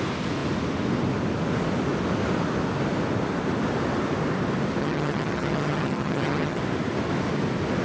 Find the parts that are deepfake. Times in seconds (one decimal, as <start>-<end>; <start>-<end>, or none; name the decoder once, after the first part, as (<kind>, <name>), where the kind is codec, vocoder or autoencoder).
4.8-6.6 (vocoder, HiFi-GAN)